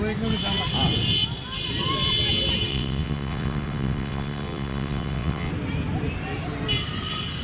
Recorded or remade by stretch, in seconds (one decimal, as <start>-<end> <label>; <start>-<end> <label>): 0.0-2.7 recorded; 2.7-5.5 remade; 5.5-7.4 recorded

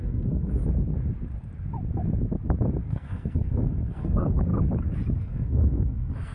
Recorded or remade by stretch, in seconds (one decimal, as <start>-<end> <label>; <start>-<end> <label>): 0.0-0.6 remade; 0.6-2.8 recorded; 2.8-4.5 remade; 4.5-5.2 recorded; 5.2-6.3 remade

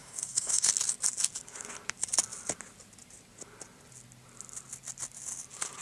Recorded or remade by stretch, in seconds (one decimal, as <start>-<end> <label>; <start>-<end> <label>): 0.0-0.7 remade; 0.7-5.8 recorded

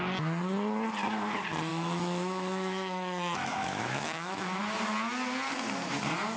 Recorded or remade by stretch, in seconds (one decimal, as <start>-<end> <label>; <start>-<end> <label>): 0.0-1.7 recorded; 1.7-4.6 remade; 4.6-6.4 recorded

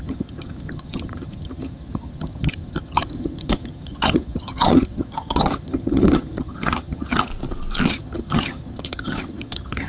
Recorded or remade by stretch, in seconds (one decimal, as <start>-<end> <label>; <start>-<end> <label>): 0.0-7.3 remade; 7.3-7.9 recorded; 7.9-9.9 remade